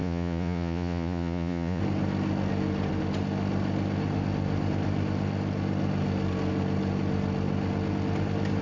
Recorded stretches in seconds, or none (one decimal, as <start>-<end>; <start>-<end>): 1.8-8.6